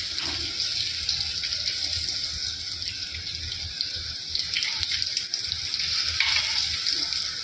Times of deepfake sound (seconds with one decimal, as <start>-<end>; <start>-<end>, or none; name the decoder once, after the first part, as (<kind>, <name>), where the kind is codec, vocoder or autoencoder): 3.9-5.2 (vocoder, BigVGAN v2)

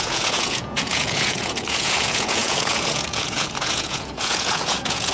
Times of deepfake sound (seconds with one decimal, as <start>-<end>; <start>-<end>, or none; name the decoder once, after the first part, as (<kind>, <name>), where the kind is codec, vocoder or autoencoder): 0.0-5.1 (vocoder, Vocos)

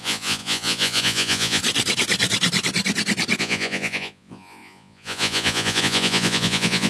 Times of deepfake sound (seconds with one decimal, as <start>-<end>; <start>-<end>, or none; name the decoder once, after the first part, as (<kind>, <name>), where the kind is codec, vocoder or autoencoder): 0.0-1.6 (vocoder, Vocos); 3.4-6.9